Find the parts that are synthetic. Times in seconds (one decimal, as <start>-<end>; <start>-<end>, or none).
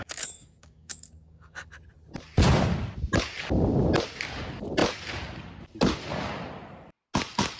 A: 0.0-1.7